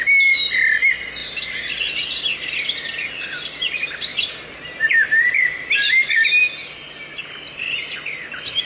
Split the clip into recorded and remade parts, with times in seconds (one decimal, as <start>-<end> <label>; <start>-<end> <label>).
0.0-1.2 recorded; 1.2-2.7 remade; 2.7-4.1 recorded; 4.1-5.4 remade; 5.4-8.6 recorded